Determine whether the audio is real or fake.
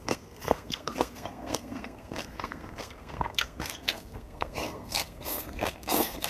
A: fake